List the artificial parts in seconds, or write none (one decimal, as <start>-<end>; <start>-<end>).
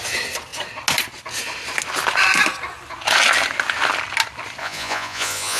4.6-5.6